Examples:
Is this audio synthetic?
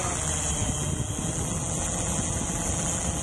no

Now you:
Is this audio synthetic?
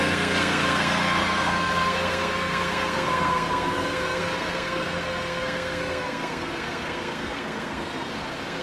yes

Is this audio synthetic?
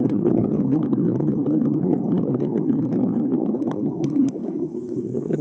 yes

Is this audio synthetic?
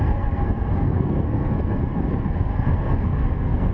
yes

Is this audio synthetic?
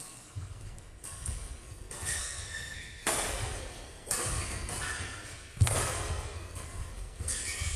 yes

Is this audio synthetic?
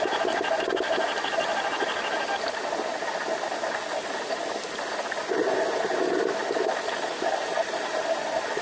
no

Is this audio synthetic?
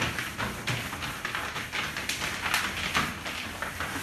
no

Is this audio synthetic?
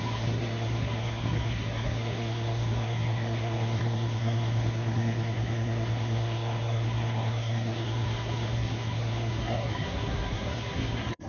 yes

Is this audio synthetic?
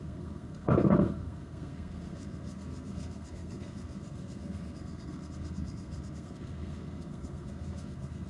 yes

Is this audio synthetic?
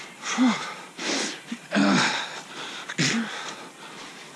no